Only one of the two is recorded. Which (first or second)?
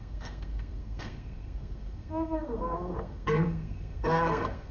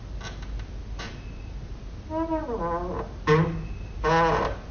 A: second